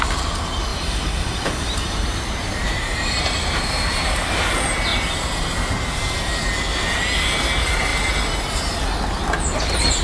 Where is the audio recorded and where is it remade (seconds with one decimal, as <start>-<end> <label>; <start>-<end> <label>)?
0.0-0.7 recorded; 0.7-4.5 remade; 4.5-4.9 recorded; 4.9-6.3 remade; 6.3-10.0 recorded